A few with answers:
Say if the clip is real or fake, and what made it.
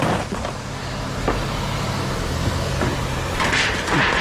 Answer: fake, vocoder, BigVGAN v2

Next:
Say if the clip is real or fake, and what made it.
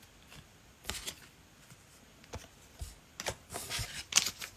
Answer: real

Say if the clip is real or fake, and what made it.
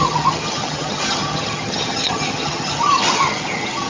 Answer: fake, vocoder, HiFi-GAN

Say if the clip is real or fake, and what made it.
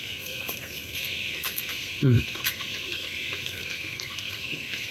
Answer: fake, codec, SNAC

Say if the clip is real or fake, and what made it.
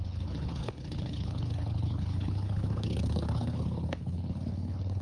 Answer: fake, codec, HILCodec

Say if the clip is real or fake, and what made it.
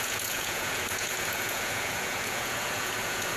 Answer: fake, vocoder, Vocos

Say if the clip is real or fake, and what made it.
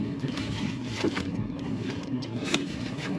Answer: fake, codec, SNAC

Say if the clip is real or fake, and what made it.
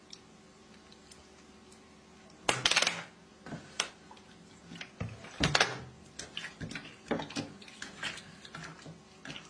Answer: real